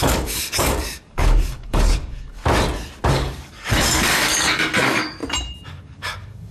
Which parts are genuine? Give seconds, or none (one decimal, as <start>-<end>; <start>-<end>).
2.4-3.1; 5.2-5.7